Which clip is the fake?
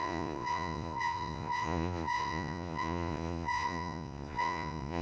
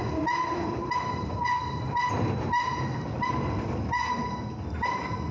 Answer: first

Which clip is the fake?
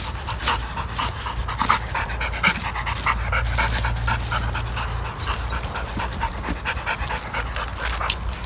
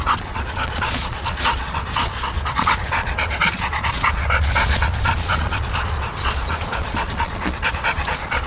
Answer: second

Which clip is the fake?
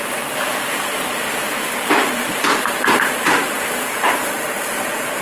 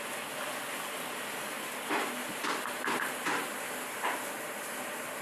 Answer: first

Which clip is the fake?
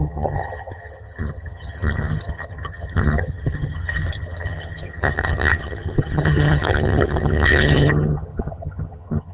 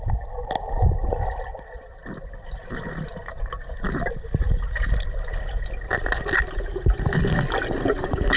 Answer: first